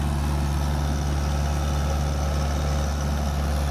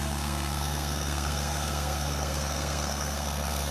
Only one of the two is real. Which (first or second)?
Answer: first